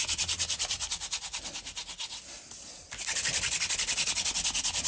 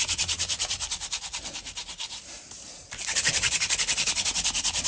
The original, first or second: first